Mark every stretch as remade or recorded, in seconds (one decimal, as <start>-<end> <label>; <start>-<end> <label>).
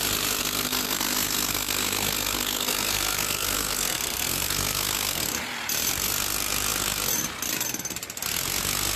0.0-0.4 recorded; 0.4-5.2 remade; 5.2-9.0 recorded